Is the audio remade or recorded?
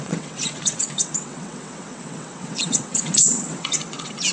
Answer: remade